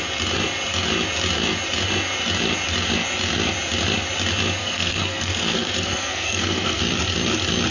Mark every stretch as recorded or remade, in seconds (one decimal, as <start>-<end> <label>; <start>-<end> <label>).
0.0-4.6 recorded; 4.6-6.8 remade; 6.8-7.7 recorded